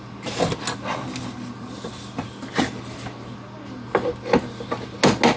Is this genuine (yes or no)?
yes